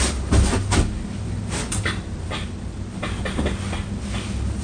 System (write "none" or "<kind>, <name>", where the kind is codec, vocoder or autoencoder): none